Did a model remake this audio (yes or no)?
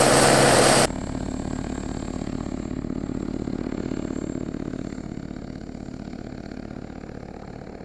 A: no